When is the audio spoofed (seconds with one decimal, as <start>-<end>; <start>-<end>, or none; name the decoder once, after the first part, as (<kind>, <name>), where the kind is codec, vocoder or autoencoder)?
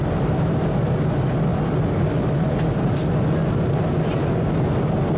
none